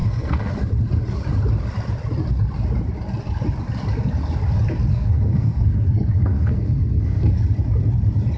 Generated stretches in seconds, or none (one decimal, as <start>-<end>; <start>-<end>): 0.0-0.5; 4.9-7.4